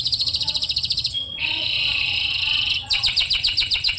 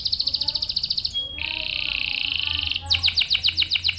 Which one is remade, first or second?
first